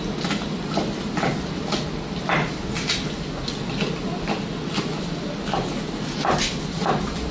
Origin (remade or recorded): recorded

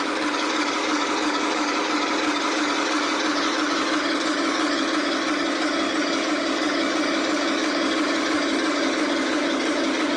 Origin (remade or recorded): remade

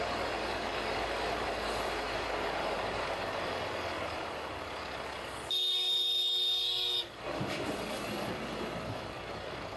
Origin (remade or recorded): remade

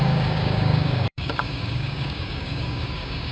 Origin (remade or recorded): remade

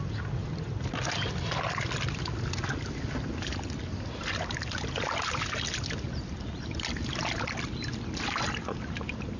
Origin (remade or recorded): recorded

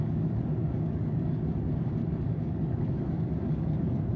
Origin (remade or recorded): remade